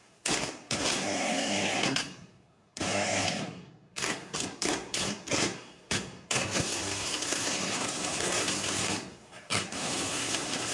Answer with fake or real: fake